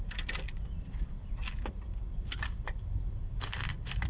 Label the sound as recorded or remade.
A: recorded